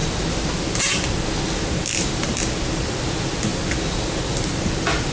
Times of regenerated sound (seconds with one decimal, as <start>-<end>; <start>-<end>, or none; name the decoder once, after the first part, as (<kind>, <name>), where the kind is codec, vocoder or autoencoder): none